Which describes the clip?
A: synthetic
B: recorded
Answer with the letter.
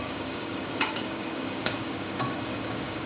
A